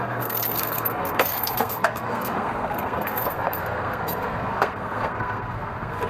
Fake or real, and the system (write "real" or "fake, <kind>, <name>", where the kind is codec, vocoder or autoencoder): fake, codec, SNAC